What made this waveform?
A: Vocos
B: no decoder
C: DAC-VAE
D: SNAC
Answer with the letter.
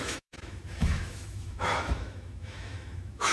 C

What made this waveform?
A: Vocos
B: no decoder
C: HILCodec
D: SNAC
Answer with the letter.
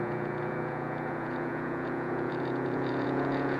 A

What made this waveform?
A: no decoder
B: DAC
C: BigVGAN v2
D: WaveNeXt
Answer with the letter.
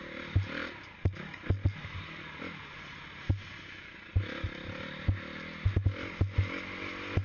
A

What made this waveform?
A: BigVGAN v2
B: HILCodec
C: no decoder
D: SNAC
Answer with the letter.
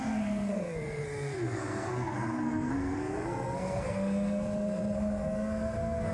D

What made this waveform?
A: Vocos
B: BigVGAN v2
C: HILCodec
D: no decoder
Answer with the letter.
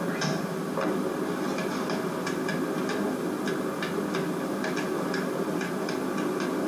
D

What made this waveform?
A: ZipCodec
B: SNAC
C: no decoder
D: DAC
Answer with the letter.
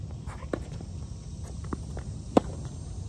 C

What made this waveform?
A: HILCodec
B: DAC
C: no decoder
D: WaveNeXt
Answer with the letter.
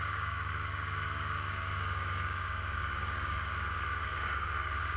B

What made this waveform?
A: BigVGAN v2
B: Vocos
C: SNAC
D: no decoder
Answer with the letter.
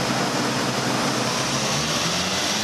D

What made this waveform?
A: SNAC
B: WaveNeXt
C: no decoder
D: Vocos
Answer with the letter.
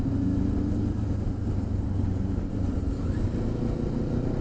C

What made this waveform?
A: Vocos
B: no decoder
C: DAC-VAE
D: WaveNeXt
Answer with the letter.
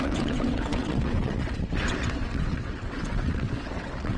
D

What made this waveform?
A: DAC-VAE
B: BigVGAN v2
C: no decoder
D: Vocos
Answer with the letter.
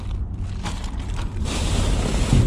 C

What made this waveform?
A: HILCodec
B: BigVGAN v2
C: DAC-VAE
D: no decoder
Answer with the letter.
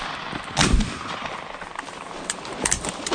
D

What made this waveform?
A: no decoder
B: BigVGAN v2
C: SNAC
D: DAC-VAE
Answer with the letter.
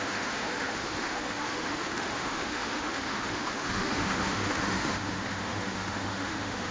D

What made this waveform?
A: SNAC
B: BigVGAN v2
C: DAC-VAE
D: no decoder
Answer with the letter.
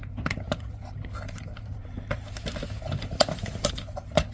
B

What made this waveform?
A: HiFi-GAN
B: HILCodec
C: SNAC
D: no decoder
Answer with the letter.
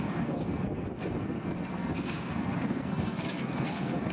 C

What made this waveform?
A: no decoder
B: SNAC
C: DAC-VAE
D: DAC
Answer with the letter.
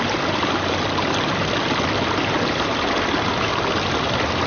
A